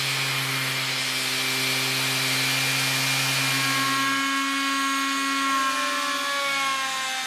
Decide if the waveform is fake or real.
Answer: real